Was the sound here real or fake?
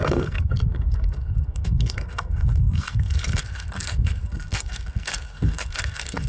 fake